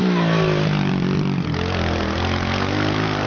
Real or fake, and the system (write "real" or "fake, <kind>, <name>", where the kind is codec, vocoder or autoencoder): real